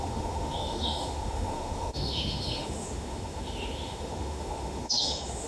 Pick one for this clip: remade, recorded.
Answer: remade